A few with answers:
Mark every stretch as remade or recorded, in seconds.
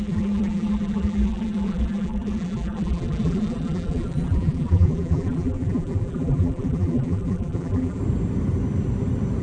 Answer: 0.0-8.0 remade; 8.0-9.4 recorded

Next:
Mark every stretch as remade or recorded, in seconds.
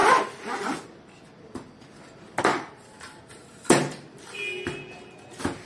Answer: 0.0-2.5 recorded; 2.5-3.3 remade; 3.3-5.7 recorded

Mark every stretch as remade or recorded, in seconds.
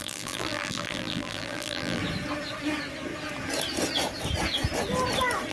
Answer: 0.0-2.0 remade; 2.0-5.5 recorded